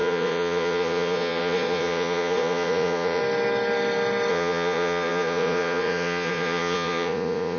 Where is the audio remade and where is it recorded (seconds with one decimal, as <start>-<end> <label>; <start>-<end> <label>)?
0.0-3.2 remade; 3.2-4.3 recorded; 4.3-7.6 remade

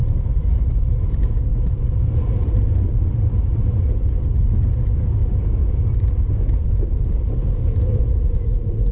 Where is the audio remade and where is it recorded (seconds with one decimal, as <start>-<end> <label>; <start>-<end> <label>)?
0.0-1.0 remade; 1.0-1.5 recorded; 1.5-4.6 remade; 4.6-8.9 recorded